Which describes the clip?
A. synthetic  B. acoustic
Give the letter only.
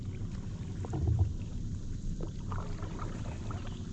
B